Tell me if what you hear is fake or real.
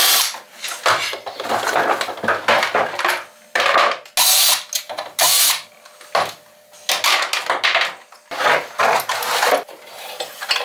real